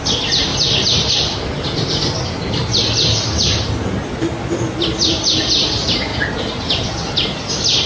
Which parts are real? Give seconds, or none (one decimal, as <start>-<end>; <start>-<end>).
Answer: 0.0-7.9